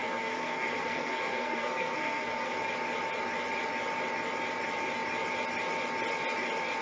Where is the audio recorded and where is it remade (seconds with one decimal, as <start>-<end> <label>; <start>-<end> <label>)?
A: 0.0-2.5 remade; 2.5-6.8 recorded